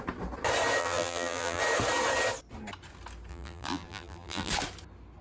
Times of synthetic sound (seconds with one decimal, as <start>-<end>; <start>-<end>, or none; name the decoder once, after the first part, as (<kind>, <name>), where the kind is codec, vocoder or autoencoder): 0.8-1.6 (vocoder, BigVGAN v2); 3.3-4.5